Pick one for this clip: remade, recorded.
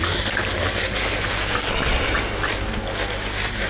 recorded